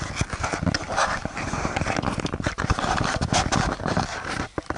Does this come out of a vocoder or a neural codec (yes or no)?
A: no